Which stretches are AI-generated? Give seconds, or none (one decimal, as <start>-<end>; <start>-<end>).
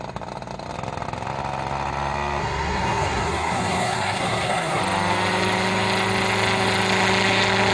2.4-4.8